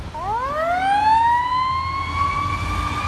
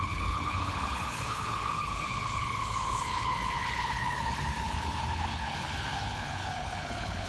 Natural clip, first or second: first